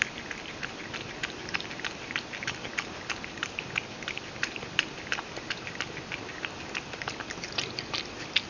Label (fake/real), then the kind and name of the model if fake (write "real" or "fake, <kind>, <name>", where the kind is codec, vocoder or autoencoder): real